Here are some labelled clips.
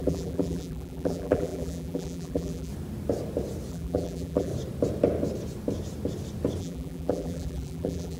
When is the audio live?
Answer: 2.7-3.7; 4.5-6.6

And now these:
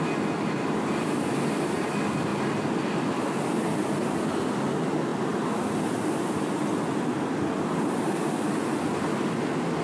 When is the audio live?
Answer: 0.0-2.3; 3.7-5.1; 7.1-9.8

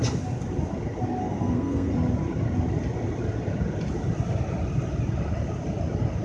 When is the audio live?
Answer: 0.0-1.2; 1.9-6.2

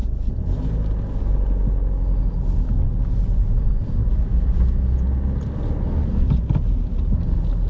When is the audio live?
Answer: 0.0-7.7

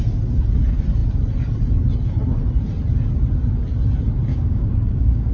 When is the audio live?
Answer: 0.0-4.3

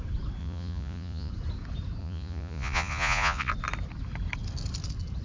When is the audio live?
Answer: 0.0-0.4; 1.3-2.0; 3.5-5.2

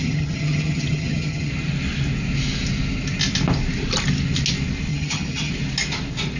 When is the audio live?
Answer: 1.5-4.9; 5.5-6.4

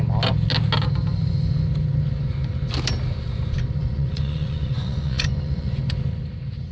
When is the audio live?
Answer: 0.0-3.8; 5.8-6.7